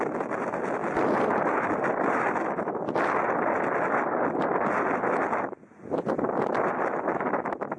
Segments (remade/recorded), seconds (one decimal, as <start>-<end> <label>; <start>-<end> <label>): 0.0-7.8 recorded